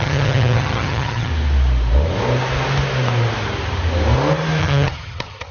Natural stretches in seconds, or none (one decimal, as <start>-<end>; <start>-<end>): 1.3-4.6